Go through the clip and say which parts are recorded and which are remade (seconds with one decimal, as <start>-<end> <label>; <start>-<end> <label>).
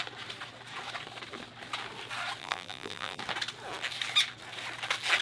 0.0-2.4 recorded; 2.4-3.2 remade; 3.2-5.2 recorded